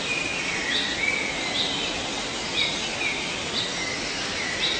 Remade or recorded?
recorded